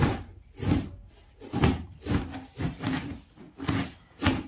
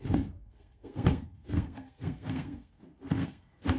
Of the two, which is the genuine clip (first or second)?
first